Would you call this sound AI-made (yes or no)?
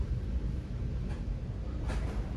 no